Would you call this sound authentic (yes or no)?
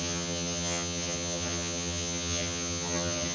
no